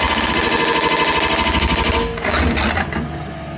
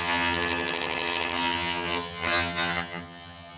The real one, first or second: first